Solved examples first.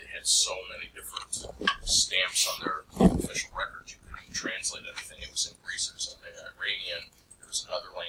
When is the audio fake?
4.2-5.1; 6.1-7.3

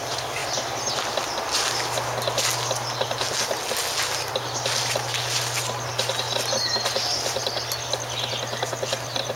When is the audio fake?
none

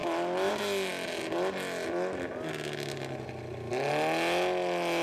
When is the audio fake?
none

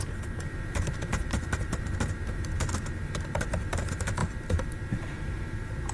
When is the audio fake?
0.0-4.2; 4.9-5.9

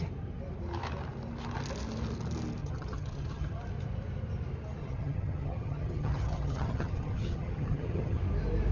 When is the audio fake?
2.6-3.6; 4.8-8.2

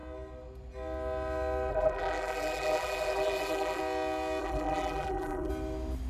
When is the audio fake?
1.7-3.8; 4.4-5.5